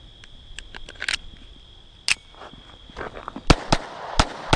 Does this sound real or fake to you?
real